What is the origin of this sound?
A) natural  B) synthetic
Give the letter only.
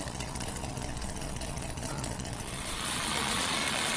B